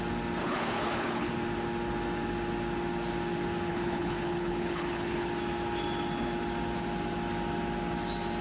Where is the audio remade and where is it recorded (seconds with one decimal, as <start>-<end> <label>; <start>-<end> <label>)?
0.0-0.4 recorded; 0.4-1.3 remade; 1.3-3.7 recorded; 3.7-5.3 remade; 5.3-8.4 recorded